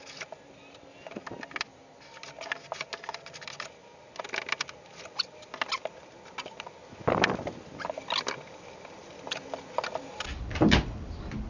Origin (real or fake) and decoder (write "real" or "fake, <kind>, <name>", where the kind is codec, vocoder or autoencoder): real